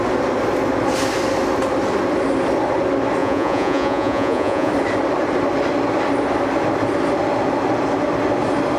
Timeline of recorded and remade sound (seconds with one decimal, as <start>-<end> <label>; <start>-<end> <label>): 0.0-3.2 recorded; 3.2-4.7 remade; 4.7-8.8 recorded